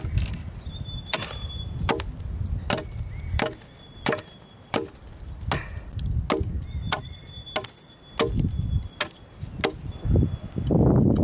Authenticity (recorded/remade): recorded